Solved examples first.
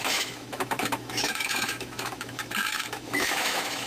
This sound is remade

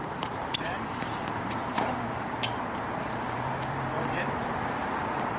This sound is remade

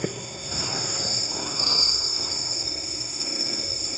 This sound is remade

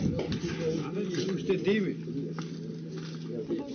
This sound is recorded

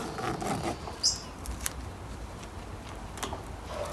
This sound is recorded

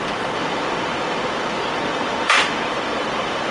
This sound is remade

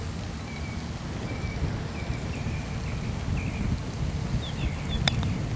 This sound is recorded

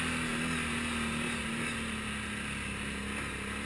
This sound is recorded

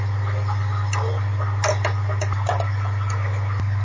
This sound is recorded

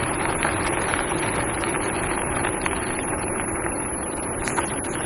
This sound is remade